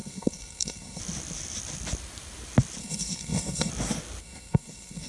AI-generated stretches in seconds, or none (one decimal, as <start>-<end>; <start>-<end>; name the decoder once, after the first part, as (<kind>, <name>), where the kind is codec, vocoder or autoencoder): 0.0-1.0 (codec, SNAC); 2.8-3.7; 4.2-5.1